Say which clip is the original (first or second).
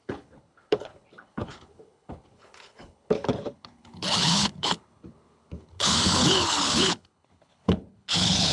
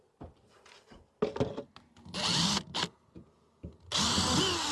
second